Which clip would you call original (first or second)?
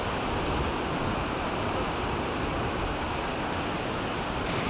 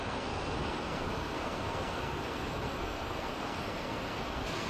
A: first